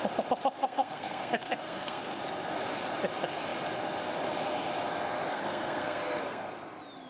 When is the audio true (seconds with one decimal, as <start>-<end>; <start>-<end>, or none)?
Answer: 0.0-0.6; 2.2-5.3; 6.5-7.1